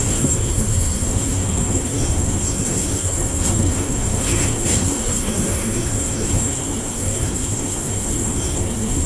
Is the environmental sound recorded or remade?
remade